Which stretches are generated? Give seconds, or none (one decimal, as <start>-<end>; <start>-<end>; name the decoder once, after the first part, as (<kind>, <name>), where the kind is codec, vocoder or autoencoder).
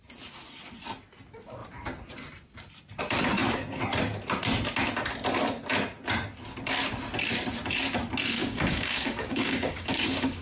8.4-10.4 (codec, DAC)